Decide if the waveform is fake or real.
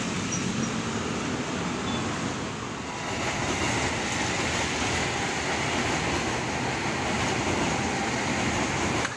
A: real